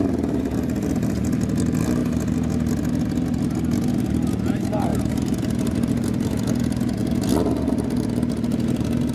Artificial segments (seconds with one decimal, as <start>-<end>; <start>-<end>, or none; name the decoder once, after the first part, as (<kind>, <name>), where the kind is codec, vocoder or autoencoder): 4.9-5.9 (vocoder, BigVGAN v2)